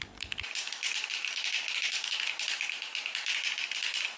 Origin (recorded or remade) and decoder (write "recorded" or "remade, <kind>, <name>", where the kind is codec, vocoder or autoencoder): recorded